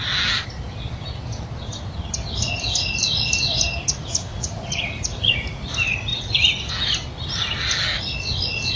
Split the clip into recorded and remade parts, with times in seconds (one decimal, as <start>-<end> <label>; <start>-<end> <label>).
0.0-4.3 recorded; 4.3-5.6 remade; 5.6-6.1 recorded; 6.1-6.7 remade; 6.7-8.8 recorded